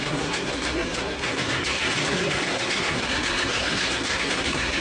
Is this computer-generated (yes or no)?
yes